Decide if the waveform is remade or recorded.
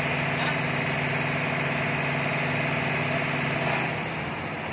recorded